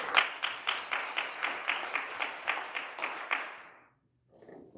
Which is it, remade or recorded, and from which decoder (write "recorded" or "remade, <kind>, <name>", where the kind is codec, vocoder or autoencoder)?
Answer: recorded